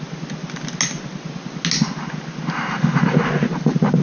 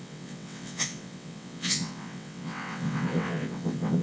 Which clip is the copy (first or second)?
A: second